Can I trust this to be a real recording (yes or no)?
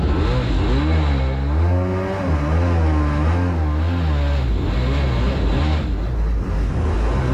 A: yes